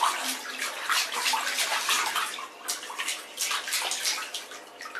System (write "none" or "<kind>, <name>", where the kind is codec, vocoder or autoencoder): none